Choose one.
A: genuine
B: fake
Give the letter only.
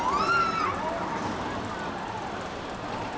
A